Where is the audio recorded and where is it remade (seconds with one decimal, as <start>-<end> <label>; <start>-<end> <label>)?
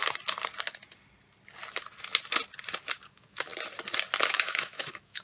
0.0-3.1 recorded; 3.1-3.5 remade; 3.5-4.3 recorded; 4.3-5.2 remade